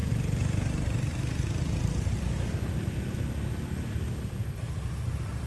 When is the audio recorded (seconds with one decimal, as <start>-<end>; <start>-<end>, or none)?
2.2-4.4; 5.1-5.5